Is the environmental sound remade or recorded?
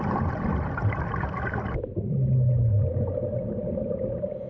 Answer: recorded